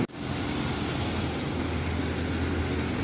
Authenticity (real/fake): real